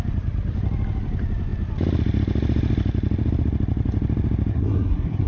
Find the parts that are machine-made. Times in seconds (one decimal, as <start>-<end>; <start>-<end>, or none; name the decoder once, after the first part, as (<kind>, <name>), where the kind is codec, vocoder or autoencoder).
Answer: 4.5-5.3 (codec, SNAC)